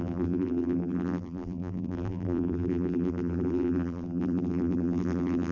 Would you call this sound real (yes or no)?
no